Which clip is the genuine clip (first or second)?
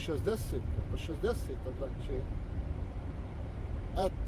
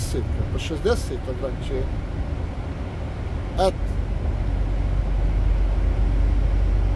second